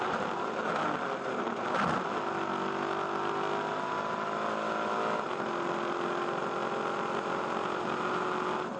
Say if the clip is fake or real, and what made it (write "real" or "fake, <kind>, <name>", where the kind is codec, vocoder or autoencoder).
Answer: real